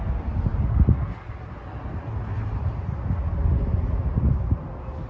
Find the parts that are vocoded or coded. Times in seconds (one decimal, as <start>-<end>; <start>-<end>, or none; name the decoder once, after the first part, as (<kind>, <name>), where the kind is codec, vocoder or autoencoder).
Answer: none

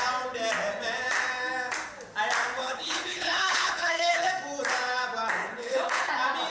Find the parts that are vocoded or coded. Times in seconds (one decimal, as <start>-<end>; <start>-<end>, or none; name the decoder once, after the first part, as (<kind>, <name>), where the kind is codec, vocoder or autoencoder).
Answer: 2.6-4.3 (codec, HILCodec); 5.4-6.1

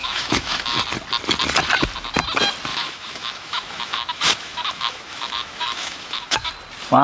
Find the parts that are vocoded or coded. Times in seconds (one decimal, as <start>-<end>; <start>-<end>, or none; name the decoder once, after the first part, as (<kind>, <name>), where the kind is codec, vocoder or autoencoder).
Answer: 0.0-0.8 (autoencoder, DAC-VAE); 2.7-6.5

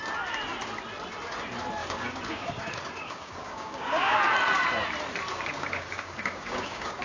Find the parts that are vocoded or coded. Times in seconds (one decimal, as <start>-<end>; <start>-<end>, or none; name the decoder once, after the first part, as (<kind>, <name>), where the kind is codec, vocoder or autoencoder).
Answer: 1.8-4.2 (codec, DAC); 5.3-7.0

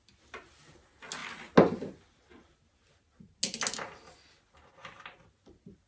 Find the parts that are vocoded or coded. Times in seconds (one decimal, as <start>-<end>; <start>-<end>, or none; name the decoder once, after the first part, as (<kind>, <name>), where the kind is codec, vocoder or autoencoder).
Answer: none